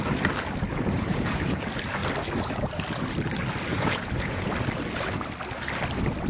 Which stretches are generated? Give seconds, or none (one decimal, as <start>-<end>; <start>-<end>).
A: 0.7-1.6; 3.7-4.4